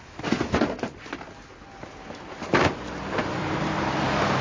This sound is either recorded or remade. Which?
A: recorded